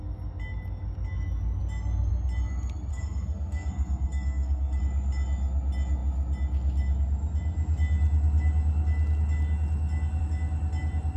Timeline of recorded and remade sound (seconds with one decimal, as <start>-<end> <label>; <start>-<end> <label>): 0.0-2.9 recorded; 2.9-4.8 remade; 4.8-11.2 recorded